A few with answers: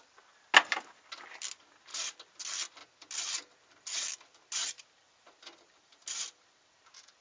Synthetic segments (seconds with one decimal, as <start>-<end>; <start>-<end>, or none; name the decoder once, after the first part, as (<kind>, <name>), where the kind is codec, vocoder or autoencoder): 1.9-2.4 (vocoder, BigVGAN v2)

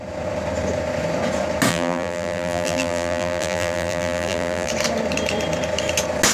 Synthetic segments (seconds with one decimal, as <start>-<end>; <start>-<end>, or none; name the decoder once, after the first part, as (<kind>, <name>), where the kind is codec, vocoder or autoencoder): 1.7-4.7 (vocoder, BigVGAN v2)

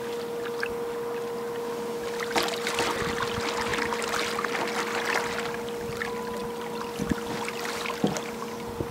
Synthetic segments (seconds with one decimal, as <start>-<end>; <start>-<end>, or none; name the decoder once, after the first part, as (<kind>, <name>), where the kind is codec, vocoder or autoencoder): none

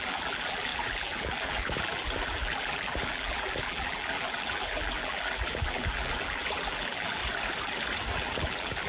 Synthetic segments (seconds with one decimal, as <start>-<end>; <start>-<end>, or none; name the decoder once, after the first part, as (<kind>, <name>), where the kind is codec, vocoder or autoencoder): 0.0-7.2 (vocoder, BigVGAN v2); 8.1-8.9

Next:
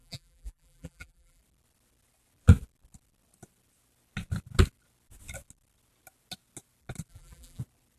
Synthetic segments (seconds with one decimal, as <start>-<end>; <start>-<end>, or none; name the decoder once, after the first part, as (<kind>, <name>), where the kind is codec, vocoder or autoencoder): 0.0-1.4 (vocoder, BigVGAN v2); 7.1-7.6

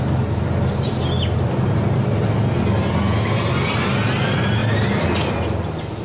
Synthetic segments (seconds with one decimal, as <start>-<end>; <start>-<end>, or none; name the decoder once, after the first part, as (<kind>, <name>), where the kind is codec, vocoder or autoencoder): none